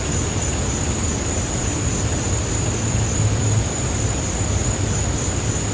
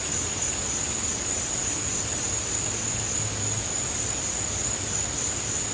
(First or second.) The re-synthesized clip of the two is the first